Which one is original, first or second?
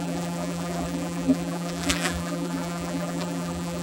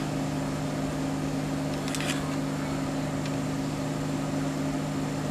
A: second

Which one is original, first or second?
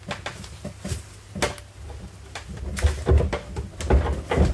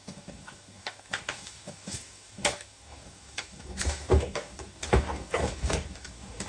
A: first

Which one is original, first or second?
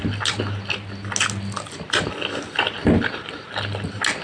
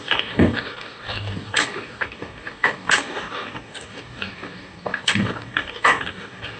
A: first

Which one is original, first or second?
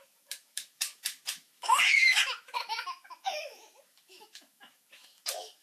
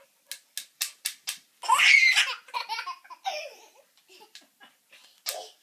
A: second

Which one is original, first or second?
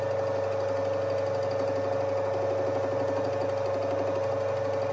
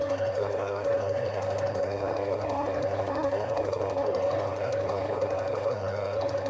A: first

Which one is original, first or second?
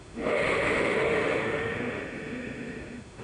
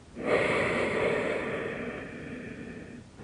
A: second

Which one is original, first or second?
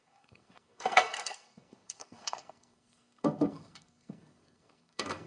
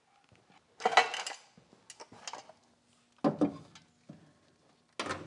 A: second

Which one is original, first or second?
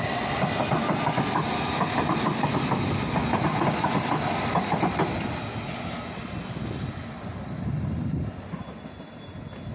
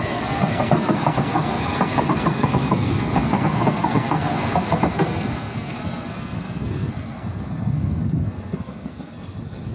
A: first